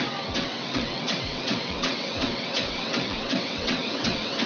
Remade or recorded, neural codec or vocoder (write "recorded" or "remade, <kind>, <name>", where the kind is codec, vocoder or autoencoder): remade, vocoder, WaveNeXt